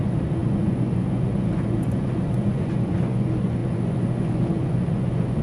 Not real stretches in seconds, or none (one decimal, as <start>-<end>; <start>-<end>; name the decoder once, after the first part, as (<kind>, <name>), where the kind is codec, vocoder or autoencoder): 0.0-5.4 (vocoder, Vocos)